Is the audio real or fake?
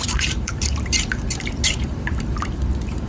fake